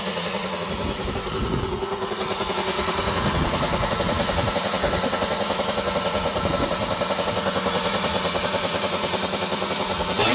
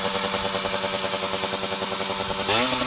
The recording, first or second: second